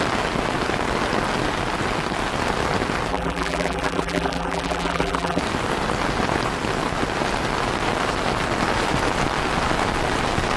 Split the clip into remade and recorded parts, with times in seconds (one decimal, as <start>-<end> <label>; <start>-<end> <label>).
0.0-3.1 recorded; 3.1-5.4 remade; 5.4-10.6 recorded

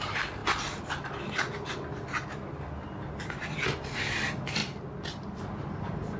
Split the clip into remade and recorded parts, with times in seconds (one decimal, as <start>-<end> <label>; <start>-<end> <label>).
0.0-6.2 recorded

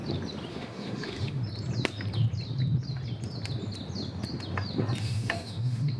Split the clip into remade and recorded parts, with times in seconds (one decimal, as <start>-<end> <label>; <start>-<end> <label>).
0.0-0.5 recorded; 0.5-1.4 remade; 1.4-5.0 recorded; 5.0-6.0 remade

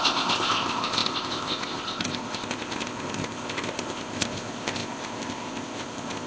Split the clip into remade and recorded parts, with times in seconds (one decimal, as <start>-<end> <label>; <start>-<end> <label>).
0.0-6.3 remade

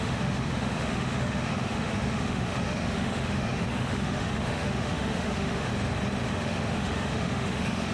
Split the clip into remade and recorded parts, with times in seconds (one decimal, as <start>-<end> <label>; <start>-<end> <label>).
0.0-5.7 remade; 5.7-6.3 recorded; 6.3-7.9 remade

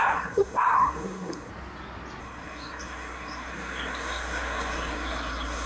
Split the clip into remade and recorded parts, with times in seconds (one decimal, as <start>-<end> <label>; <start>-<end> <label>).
0.0-1.5 remade; 1.5-2.2 recorded; 2.2-5.7 remade